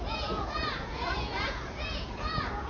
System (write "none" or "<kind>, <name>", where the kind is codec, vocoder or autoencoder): vocoder, Vocos